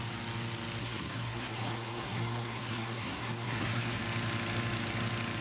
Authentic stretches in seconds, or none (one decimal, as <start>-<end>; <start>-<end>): 0.0-0.8; 4.0-5.4